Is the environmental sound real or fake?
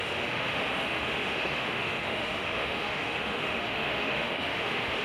fake